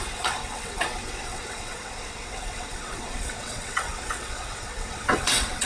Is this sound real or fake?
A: fake